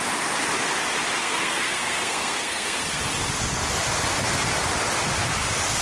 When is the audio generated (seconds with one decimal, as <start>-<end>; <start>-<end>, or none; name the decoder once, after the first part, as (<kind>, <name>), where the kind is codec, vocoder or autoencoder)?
1.2-3.0 (codec, SNAC)